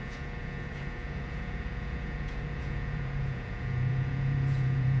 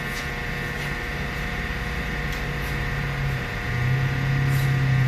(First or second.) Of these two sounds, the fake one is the first